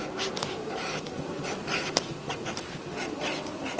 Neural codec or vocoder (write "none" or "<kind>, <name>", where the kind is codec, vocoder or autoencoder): none